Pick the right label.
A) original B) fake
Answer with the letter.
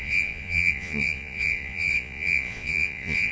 B